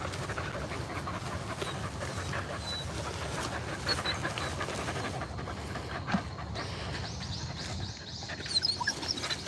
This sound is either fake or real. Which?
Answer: real